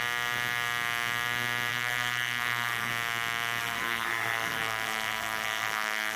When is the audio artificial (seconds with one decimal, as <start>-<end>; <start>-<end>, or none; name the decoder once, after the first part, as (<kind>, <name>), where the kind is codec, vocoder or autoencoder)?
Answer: 1.7-2.9 (codec, SNAC); 3.6-6.2